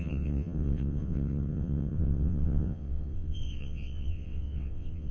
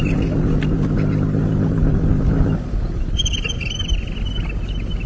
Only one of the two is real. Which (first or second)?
second